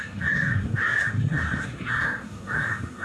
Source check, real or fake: fake